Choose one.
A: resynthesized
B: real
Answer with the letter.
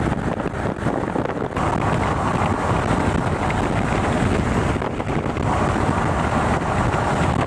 B